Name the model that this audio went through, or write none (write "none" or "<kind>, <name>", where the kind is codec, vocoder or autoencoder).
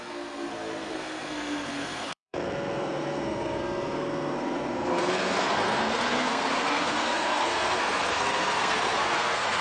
codec, SNAC